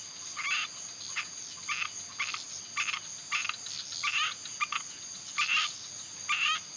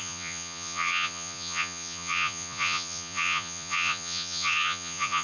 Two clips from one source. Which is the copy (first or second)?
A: second